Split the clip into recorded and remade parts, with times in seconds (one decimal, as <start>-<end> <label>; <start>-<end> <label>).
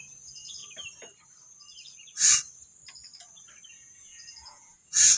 0.0-0.6 remade; 0.6-3.7 recorded; 3.7-5.2 remade